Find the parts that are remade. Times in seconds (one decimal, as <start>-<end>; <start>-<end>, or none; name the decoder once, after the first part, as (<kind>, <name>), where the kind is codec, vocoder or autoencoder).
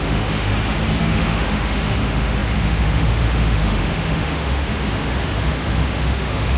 0.0-0.5 (autoencoder, DAC-VAE); 1.0-6.6